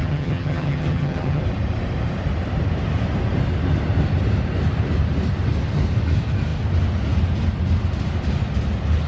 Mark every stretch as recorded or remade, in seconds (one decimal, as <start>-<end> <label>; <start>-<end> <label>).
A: 0.0-1.4 remade; 1.4-9.1 recorded